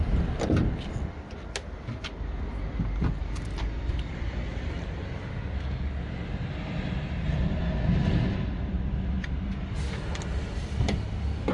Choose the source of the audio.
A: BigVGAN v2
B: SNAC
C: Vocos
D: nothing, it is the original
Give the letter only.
D